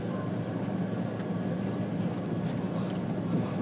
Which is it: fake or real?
real